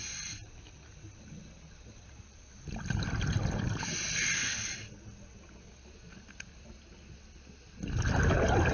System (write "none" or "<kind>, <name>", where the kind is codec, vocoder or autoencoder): none